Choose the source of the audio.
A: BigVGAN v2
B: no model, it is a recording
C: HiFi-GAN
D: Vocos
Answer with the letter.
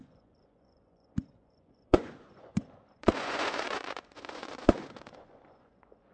D